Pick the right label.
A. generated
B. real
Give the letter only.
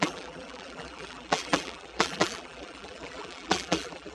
A